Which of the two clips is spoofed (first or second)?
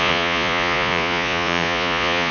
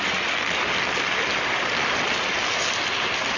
first